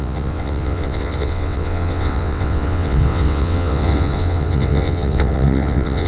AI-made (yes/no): yes